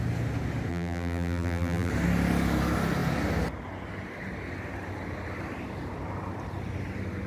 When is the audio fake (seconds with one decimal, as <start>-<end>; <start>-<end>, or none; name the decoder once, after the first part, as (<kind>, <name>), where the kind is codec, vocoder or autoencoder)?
0.7-1.9 (vocoder, BigVGAN v2)